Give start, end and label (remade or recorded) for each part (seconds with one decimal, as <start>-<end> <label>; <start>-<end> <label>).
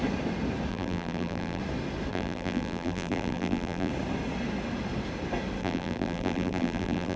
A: 0.0-0.7 recorded; 0.7-1.6 remade; 1.6-2.1 recorded; 2.1-3.9 remade; 3.9-5.6 recorded; 5.6-7.2 remade